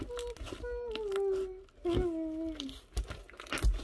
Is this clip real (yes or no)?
yes